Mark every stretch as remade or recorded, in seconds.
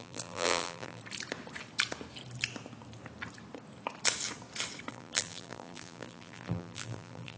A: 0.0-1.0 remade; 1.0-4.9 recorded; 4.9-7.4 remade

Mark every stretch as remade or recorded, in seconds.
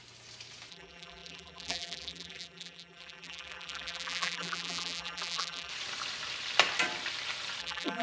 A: 0.0-0.7 recorded; 0.7-5.7 remade; 5.7-7.6 recorded; 7.6-8.0 remade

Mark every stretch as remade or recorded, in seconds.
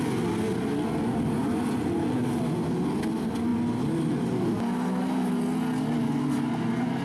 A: 0.0-7.0 recorded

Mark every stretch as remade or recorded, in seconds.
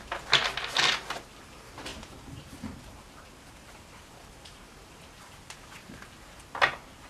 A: 0.0-0.4 remade; 0.4-1.3 recorded; 1.3-7.1 remade